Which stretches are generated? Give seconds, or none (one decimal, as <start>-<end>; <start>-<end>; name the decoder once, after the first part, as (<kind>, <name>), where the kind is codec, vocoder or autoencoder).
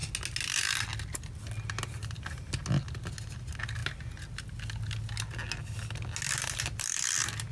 none